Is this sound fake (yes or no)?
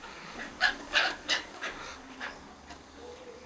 yes